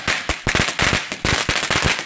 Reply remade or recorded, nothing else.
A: recorded